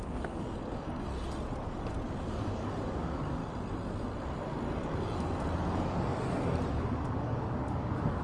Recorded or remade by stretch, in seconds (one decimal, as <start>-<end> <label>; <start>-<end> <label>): 0.0-1.1 remade; 1.1-2.3 recorded; 2.3-3.4 remade; 3.4-6.8 recorded; 6.8-8.2 remade